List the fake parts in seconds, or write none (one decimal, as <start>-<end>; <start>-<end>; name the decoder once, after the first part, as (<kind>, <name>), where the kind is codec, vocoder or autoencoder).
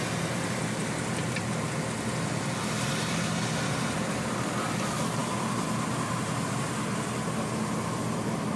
none